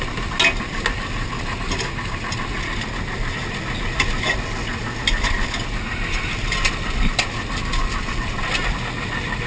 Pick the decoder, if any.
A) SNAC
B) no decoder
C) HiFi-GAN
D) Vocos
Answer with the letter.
B